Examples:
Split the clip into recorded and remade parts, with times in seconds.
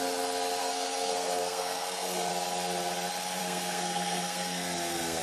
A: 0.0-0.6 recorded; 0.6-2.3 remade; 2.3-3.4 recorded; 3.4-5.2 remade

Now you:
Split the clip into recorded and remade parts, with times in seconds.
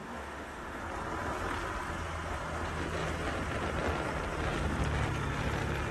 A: 0.0-0.8 remade; 0.8-5.9 recorded